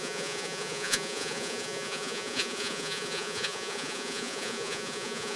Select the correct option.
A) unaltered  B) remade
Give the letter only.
B